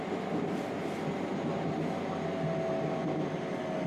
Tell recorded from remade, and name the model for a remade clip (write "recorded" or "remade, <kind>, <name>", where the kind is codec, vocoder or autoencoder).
recorded